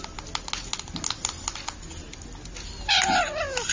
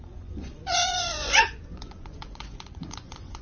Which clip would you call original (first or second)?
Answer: first